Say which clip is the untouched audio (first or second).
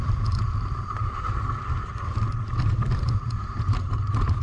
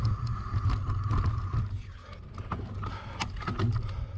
second